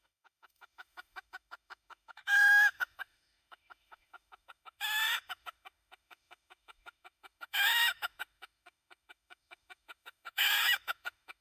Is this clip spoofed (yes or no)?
yes